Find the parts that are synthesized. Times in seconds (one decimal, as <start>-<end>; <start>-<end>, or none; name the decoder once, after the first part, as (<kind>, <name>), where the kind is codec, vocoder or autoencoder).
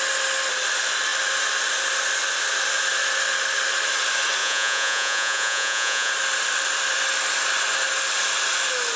4.4-6.1 (vocoder, Vocos)